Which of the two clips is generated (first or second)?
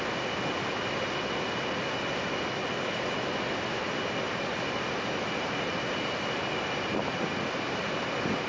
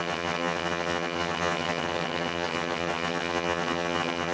second